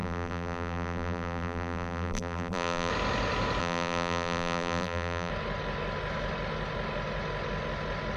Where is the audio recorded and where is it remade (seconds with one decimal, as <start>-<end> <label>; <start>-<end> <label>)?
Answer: 0.0-2.9 remade; 2.9-3.6 recorded; 3.6-5.3 remade; 5.3-8.2 recorded